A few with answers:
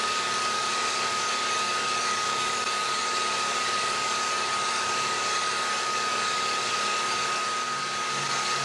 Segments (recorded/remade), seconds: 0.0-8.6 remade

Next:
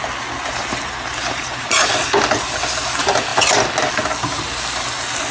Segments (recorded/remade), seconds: 0.0-0.5 recorded; 0.5-1.9 remade; 1.9-5.3 recorded